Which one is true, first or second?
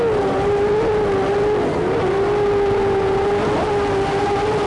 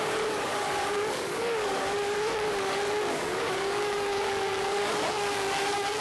first